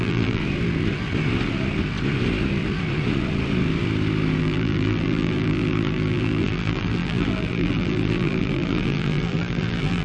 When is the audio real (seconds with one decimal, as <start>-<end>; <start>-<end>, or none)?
0.4-4.4